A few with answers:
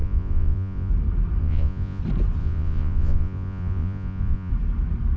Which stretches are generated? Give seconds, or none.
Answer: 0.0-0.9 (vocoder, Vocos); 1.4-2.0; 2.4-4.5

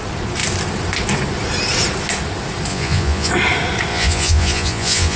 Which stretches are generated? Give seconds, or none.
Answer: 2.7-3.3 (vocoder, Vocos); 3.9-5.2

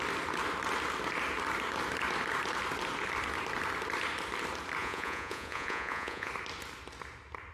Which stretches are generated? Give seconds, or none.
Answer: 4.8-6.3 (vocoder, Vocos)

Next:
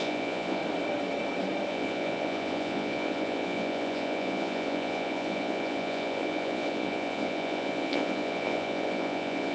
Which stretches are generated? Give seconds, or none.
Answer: 0.0-0.6 (vocoder, Vocos); 1.7-9.5